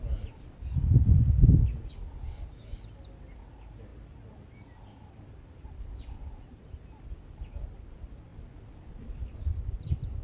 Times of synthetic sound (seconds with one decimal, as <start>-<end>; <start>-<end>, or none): none